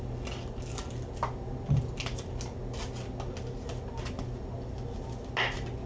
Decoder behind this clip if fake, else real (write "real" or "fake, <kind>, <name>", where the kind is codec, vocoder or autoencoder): real